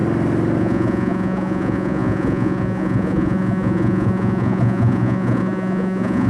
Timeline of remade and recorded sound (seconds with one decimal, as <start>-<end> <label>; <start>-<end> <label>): 0.0-0.6 recorded; 0.6-6.3 remade